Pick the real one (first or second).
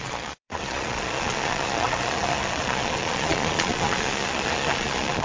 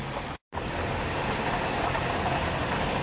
second